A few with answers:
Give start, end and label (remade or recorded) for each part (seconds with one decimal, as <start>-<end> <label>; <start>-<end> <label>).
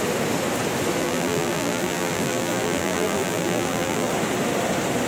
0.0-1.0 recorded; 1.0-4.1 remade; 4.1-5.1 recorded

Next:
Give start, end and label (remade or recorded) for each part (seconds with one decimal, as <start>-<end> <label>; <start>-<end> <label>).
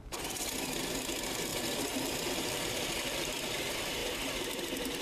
0.0-5.0 recorded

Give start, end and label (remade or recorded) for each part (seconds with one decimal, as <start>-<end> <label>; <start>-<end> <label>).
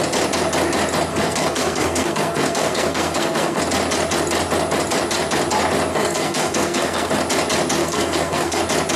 0.0-1.1 recorded; 1.1-3.6 remade; 3.6-5.9 recorded; 5.9-7.1 remade; 7.1-7.8 recorded; 7.8-8.6 remade; 8.6-9.0 recorded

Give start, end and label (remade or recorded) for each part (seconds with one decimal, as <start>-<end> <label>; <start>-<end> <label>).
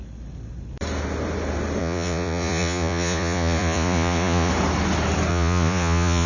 0.0-1.8 recorded; 1.8-4.5 remade; 4.5-5.3 recorded; 5.3-6.3 remade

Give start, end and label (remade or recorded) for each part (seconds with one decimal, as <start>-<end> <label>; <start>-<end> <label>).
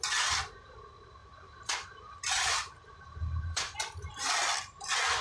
0.0-1.2 recorded; 1.2-4.3 remade; 4.3-5.2 recorded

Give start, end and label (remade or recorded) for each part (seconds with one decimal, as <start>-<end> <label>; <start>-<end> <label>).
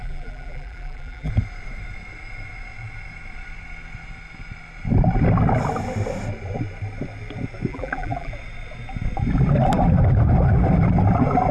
0.0-1.3 remade; 1.3-7.7 recorded; 7.7-8.3 remade; 8.3-11.5 recorded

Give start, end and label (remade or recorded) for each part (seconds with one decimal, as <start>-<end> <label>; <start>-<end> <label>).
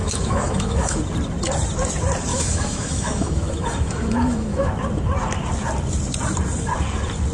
0.0-1.0 remade; 1.0-2.3 recorded; 2.3-4.7 remade; 4.7-7.3 recorded